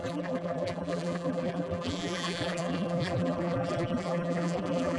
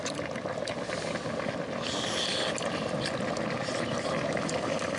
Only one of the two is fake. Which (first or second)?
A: first